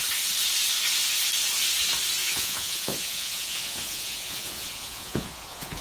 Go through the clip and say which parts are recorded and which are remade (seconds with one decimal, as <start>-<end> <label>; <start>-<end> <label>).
0.0-2.2 recorded; 2.2-5.8 remade